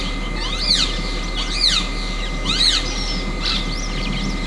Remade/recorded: recorded